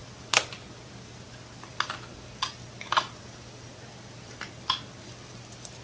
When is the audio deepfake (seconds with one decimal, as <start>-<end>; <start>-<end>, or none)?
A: none